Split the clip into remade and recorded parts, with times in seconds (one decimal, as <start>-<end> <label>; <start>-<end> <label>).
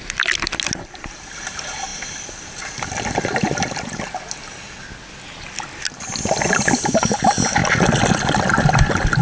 0.0-9.2 recorded